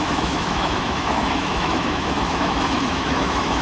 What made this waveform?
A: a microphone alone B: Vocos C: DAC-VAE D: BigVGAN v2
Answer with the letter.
C